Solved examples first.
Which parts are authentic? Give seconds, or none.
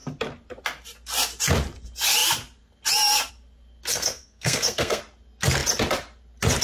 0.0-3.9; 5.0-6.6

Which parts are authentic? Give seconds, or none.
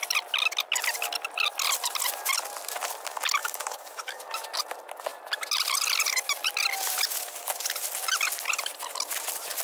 0.0-3.4; 4.3-9.6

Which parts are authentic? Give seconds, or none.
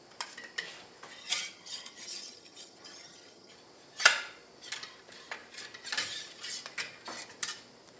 0.0-1.2; 3.5-8.0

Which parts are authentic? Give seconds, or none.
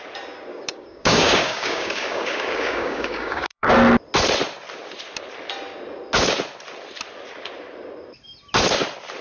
0.0-0.5; 3.7-9.2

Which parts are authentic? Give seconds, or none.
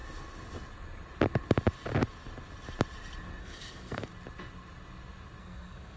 0.0-3.4; 4.1-5.4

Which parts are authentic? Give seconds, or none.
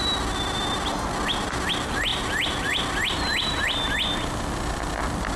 0.0-5.4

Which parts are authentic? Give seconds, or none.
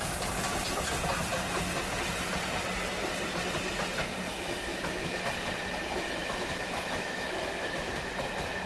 0.0-4.7; 5.2-6.2; 8.1-8.7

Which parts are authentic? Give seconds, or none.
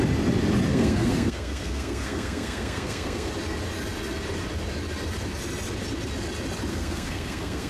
0.0-0.7; 3.3-6.7